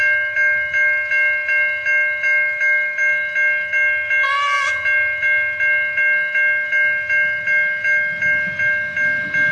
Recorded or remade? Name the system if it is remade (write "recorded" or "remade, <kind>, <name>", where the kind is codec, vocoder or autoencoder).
recorded